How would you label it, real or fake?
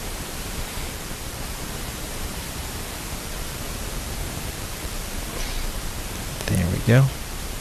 fake